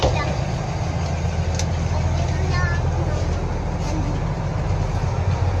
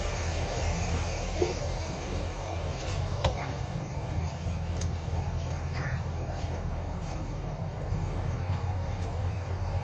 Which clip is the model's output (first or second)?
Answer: second